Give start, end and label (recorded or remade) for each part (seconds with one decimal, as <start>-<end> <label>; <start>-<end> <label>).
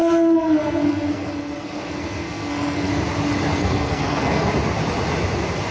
0.0-2.9 remade; 2.9-3.5 recorded; 3.5-4.5 remade; 4.5-5.7 recorded